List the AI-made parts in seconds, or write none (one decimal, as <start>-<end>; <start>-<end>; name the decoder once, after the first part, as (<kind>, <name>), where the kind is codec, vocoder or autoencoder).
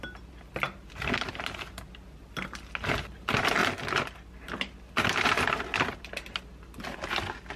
none